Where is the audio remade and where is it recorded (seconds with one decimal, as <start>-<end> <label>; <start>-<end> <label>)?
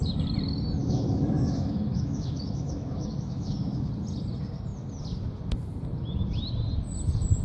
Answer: 0.0-0.8 recorded; 0.8-3.9 remade; 3.9-7.4 recorded